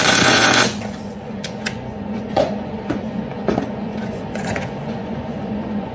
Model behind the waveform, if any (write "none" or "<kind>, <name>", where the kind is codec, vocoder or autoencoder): vocoder, Vocos